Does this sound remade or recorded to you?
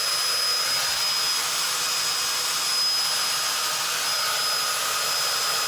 recorded